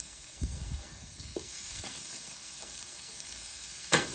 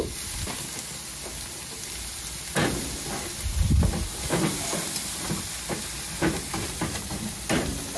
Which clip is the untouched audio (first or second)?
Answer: second